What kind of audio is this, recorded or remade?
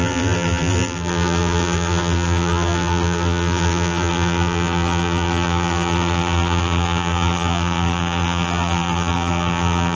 remade